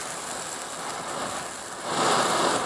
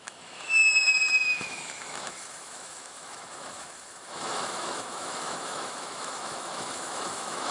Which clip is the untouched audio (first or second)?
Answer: first